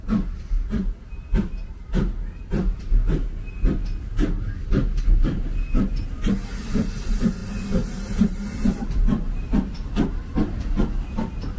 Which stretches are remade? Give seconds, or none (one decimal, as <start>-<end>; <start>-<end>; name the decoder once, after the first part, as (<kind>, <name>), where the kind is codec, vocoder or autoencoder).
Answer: none